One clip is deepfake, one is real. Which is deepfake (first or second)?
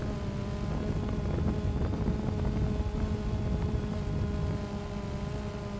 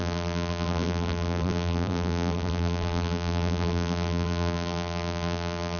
second